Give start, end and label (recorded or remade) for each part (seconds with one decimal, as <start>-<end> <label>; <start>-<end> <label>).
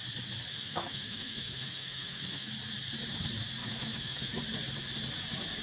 0.0-0.5 recorded; 0.5-2.5 remade; 2.5-3.6 recorded; 3.6-4.4 remade; 4.4-5.6 recorded